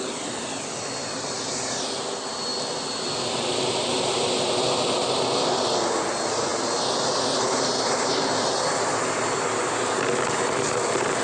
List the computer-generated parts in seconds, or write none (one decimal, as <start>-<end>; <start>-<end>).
none